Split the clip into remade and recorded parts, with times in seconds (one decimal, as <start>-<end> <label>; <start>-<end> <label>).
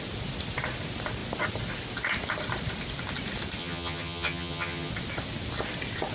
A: 0.0-3.6 recorded; 3.6-4.9 remade; 4.9-6.1 recorded